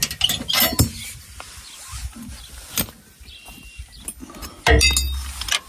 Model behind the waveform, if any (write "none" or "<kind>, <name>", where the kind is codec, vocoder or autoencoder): none